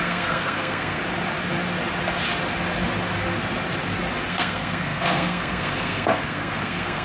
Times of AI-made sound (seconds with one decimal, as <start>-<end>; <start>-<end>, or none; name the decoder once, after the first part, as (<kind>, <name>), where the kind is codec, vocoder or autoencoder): 0.0-1.0 (codec, SNAC); 4.3-7.0